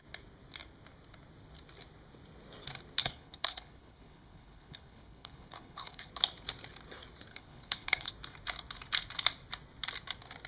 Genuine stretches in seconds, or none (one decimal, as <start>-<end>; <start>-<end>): 0.0-3.0; 6.1-7.3; 8.1-10.5